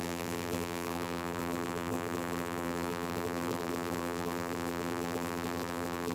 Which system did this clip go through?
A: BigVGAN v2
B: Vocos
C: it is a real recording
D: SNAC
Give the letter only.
A